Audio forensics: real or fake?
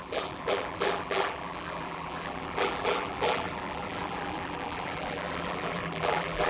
fake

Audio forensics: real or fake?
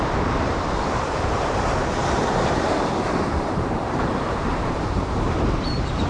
fake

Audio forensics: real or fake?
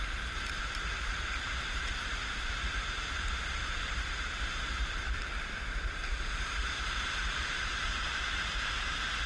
fake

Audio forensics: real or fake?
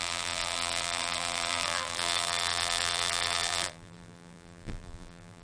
fake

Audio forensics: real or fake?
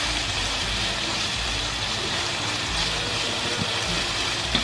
fake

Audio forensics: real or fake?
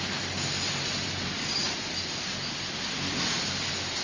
real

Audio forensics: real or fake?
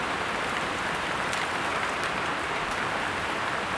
fake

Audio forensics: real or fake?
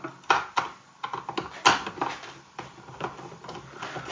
real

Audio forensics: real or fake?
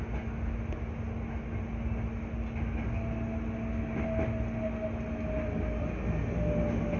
real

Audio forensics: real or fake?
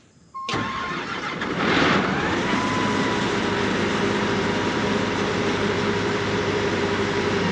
fake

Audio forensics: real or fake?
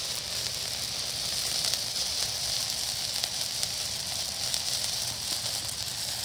real